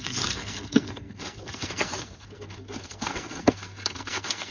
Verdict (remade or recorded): remade